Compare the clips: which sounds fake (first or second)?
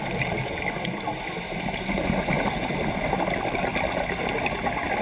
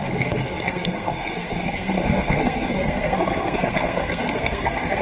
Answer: second